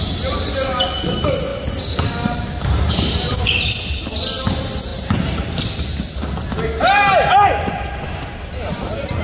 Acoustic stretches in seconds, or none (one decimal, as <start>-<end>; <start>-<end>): 0.0-9.2